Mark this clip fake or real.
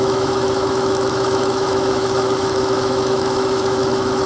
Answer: fake